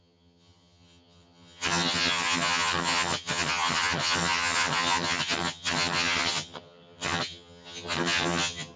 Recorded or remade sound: remade